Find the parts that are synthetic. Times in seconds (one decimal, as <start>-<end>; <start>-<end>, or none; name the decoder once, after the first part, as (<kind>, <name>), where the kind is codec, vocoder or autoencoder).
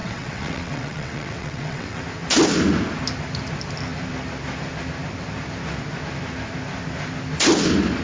0.0-2.0 (vocoder, WaveNeXt)